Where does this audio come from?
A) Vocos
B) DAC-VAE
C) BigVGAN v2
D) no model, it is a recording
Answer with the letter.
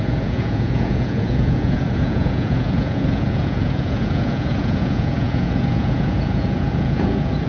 A